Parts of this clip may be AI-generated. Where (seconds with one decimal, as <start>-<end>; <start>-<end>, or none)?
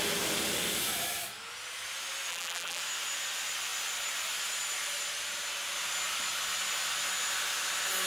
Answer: 2.3-2.8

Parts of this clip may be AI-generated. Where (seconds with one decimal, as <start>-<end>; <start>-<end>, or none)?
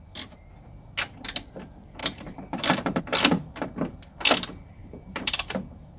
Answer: 2.0-3.0; 4.8-6.0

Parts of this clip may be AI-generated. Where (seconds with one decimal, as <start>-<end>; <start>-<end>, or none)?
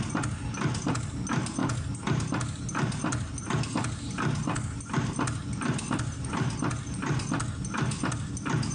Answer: none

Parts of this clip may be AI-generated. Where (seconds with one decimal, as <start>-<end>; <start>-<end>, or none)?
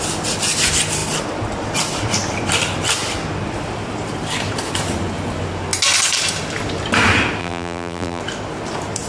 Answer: 7.4-8.2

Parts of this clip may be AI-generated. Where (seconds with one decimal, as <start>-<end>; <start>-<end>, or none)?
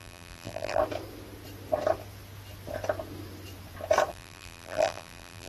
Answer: 0.0-0.8; 4.1-5.5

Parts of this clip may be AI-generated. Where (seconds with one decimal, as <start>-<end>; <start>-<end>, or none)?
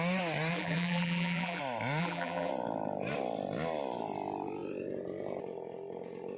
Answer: 0.5-1.6; 2.0-2.5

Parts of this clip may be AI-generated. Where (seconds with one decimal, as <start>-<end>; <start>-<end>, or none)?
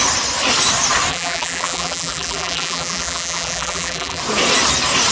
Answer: 1.1-4.2